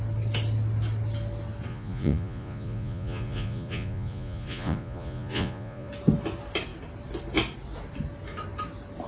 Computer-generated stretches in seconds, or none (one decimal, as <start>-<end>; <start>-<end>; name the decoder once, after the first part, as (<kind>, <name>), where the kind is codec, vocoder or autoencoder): 1.7-5.9 (vocoder, Vocos)